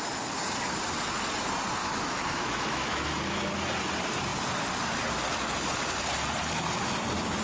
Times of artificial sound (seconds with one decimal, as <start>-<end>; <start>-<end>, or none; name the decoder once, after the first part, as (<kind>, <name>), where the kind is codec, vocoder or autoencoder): 1.8-3.2 (autoencoder, DAC-VAE)